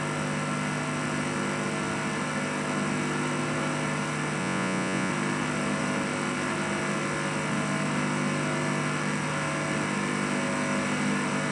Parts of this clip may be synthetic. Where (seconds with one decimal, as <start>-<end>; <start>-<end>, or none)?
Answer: 4.4-5.1